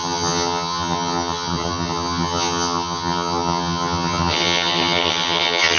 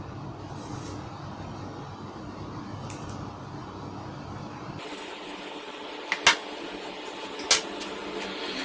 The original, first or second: second